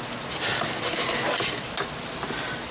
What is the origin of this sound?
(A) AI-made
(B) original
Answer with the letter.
B